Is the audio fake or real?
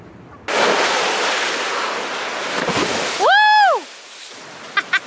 real